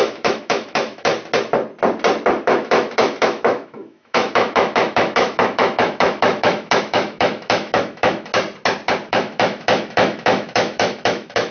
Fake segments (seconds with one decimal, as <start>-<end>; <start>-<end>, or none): 0.0-1.1; 2.3-8.3; 9.1-11.5